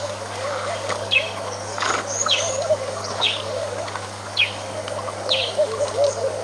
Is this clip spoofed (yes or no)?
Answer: yes